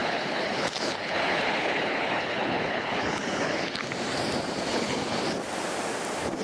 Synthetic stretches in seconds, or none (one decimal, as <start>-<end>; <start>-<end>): 0.0-3.8; 4.7-5.2